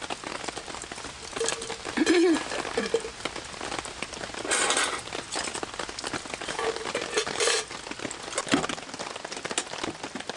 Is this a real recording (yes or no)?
yes